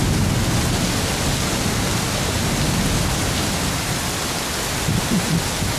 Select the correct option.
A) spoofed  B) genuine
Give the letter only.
B